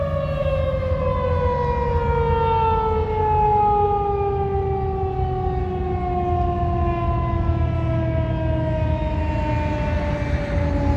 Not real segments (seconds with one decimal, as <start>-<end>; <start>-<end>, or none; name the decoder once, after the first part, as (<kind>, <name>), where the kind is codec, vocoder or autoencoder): 0.4-1.0 (autoencoder, DAC-VAE)